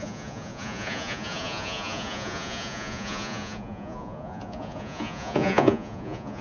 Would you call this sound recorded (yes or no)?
no